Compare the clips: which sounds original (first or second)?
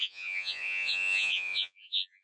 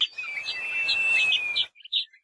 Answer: second